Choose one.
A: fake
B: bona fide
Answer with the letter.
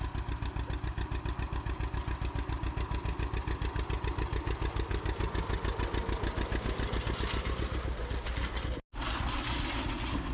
B